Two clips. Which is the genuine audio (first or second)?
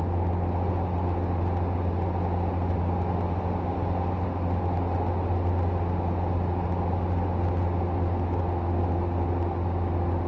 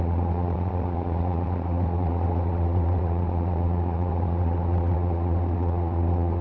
first